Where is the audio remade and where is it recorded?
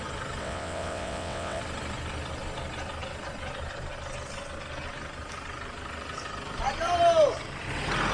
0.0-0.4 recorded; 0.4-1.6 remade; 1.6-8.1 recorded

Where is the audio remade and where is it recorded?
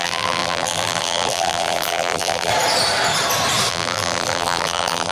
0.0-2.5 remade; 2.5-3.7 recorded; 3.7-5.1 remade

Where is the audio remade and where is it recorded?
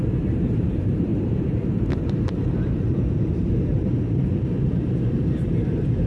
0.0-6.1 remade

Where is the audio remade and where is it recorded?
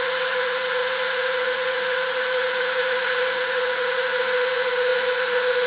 0.0-5.7 remade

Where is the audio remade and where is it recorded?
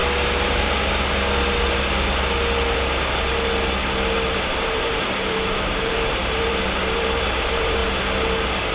0.0-4.4 recorded; 4.4-7.8 remade; 7.8-8.7 recorded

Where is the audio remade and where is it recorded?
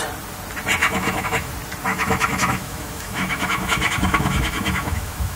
0.0-0.8 recorded; 0.8-1.5 remade; 1.5-1.9 recorded; 1.9-5.4 remade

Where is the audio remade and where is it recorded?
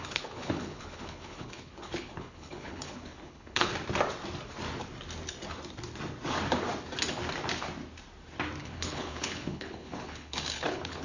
0.0-3.7 remade; 3.7-8.6 recorded; 8.6-11.0 remade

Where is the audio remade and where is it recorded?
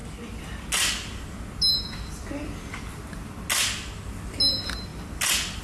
0.0-5.6 recorded